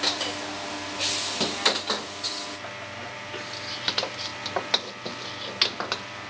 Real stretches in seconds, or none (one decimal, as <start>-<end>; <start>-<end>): 0.0-6.3